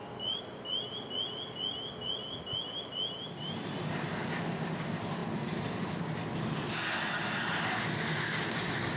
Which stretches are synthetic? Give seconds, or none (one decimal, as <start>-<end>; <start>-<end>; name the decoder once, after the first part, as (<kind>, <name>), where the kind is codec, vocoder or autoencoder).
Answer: none